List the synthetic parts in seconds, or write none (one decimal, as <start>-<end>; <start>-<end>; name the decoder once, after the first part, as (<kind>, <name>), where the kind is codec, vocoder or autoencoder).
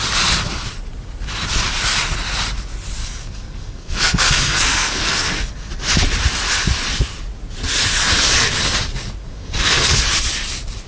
3.0-5.7 (codec, SNAC); 9.2-10.0